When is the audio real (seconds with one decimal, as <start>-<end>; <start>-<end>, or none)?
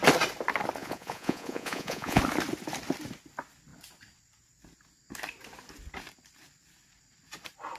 0.0-0.8; 2.2-7.8